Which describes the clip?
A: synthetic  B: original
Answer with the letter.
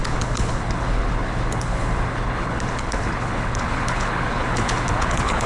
A